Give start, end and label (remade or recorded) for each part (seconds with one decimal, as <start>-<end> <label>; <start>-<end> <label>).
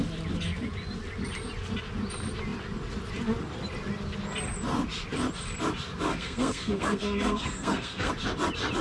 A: 0.0-6.1 recorded; 6.1-8.1 remade; 8.1-8.8 recorded